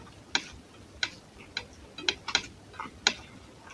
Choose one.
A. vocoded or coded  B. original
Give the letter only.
B